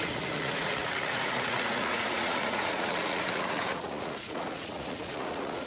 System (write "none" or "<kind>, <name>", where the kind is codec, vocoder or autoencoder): vocoder, Vocos